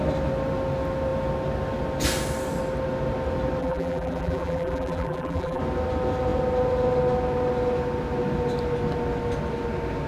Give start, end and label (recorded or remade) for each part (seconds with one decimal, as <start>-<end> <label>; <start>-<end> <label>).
0.0-3.6 recorded; 3.6-5.6 remade; 5.6-10.1 recorded